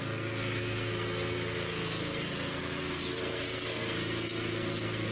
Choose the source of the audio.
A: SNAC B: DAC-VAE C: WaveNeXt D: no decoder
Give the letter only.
A